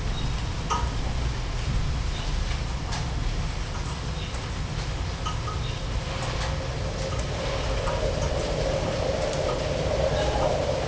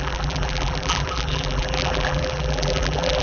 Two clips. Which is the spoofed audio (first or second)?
second